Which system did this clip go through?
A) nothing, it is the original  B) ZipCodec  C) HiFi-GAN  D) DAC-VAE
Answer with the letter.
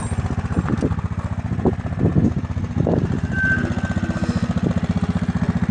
A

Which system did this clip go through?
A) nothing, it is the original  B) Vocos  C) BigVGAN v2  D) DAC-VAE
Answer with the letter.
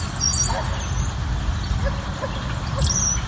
A